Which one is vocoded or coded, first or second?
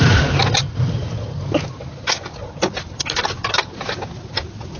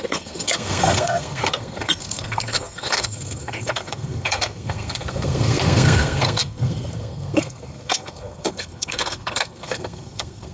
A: second